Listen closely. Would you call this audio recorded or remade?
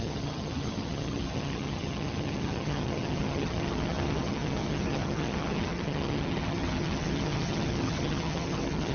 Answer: remade